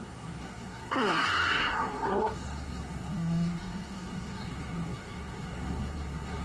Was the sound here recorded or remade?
remade